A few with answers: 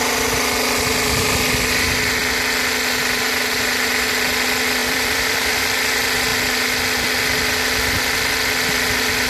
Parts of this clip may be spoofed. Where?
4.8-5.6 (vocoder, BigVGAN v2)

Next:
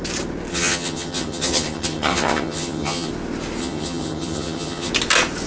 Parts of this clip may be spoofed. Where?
0.5-3.1 (vocoder, HiFi-GAN); 3.6-4.9

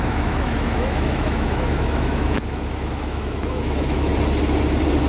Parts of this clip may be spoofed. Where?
0.0-4.1 (autoencoder, DAC-VAE)

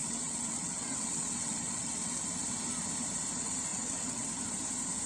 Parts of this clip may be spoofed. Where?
0.0-2.2 (vocoder, WaveNeXt); 3.7-4.3

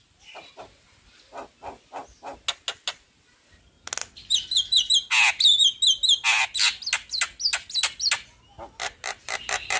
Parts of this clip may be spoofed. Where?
4.0-4.9 (vocoder, BigVGAN v2)